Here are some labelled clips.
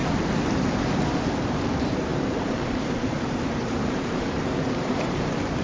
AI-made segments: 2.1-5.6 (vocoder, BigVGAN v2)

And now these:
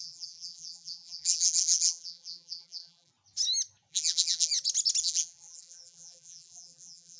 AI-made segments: 0.0-3.1 (vocoder, BigVGAN v2); 3.9-4.5; 5.0-7.2

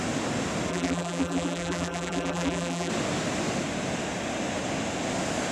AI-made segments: 0.7-2.9 (vocoder, BigVGAN v2)

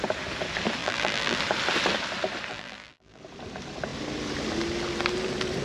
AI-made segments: 0.8-1.4 (vocoder, BigVGAN v2); 2.5-3.2